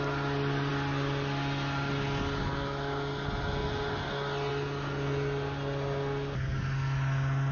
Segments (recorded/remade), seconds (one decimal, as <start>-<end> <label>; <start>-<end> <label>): 0.0-7.5 recorded